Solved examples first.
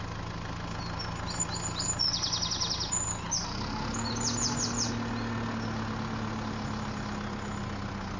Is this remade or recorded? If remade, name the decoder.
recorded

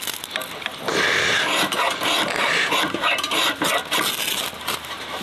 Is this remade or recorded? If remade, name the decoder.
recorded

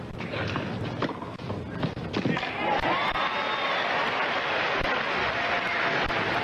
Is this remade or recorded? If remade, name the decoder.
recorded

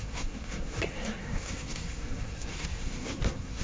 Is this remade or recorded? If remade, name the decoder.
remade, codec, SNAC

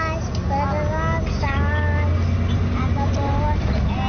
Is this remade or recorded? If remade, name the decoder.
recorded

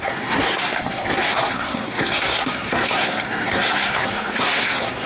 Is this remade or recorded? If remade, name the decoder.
remade, codec, SNAC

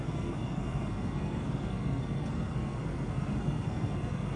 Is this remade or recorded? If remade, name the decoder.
remade, codec, SNAC